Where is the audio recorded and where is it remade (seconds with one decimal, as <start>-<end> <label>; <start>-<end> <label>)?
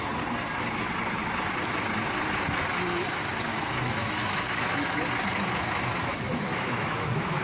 0.0-3.5 recorded; 3.5-5.1 remade; 5.1-6.0 recorded; 6.0-7.4 remade